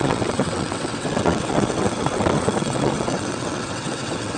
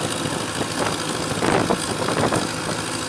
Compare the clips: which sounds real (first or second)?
second